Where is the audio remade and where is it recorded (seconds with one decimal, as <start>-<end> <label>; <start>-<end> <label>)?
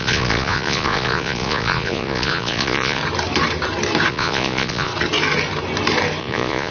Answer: 0.0-3.0 remade; 3.0-4.1 recorded; 4.1-4.9 remade; 4.9-6.2 recorded; 6.2-6.7 remade